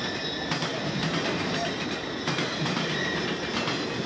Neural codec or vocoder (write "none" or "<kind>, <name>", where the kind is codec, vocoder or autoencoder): none